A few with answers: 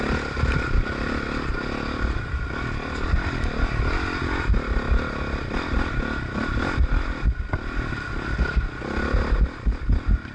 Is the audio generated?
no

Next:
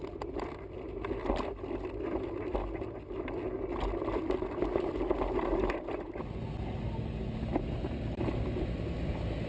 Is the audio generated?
no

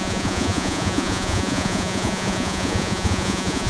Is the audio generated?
yes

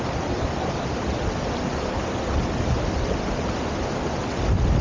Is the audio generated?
no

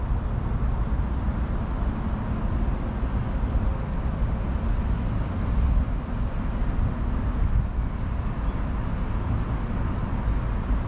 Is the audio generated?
no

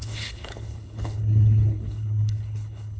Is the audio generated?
yes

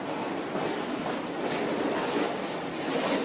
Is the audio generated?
no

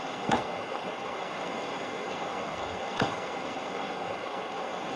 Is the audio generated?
yes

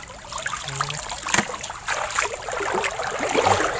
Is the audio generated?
no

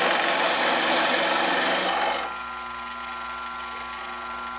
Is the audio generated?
no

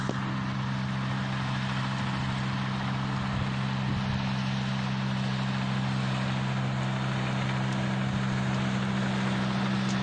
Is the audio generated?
no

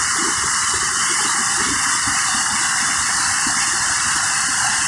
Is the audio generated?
no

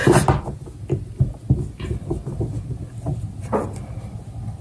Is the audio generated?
no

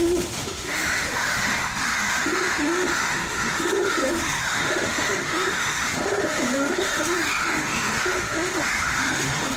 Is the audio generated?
yes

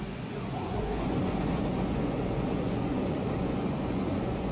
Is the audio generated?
yes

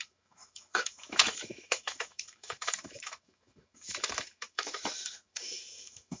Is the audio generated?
yes